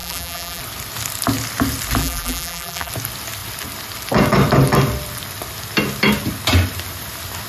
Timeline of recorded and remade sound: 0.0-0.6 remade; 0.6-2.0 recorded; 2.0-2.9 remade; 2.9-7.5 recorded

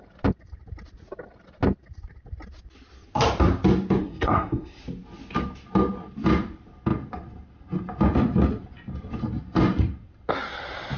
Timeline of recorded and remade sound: 0.0-4.0 recorded; 4.0-4.8 remade; 4.8-11.0 recorded